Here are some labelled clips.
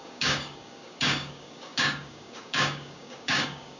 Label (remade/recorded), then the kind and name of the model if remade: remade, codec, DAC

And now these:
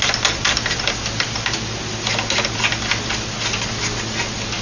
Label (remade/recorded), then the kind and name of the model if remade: recorded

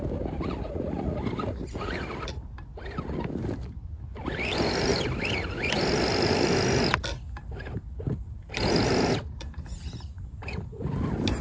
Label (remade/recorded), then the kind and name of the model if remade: recorded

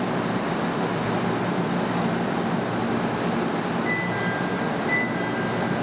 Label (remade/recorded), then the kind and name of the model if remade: recorded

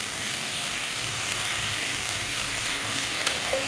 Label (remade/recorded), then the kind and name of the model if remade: remade, codec, DAC